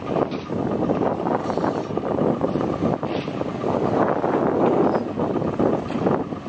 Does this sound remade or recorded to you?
recorded